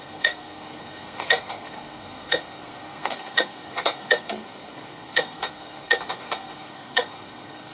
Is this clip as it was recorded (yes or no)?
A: no